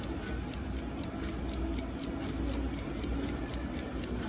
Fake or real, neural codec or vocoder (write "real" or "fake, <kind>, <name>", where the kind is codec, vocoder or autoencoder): real